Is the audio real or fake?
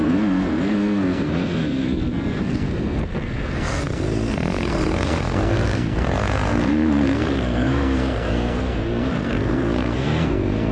fake